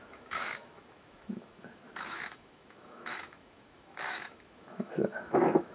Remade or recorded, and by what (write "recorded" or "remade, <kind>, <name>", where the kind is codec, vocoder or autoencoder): remade, autoencoder, DAC-VAE